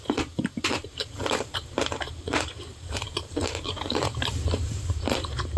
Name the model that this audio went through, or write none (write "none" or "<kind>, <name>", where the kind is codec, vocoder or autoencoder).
vocoder, BigVGAN v2